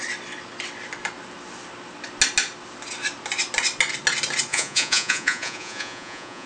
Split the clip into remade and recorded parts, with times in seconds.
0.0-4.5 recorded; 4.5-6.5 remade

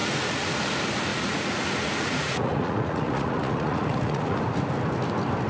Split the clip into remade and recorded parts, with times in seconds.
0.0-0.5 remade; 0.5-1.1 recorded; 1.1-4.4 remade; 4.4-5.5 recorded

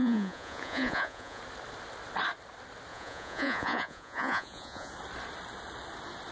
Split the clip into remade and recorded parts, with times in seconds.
0.0-1.4 remade; 1.4-2.9 recorded; 2.9-4.9 remade; 4.9-6.3 recorded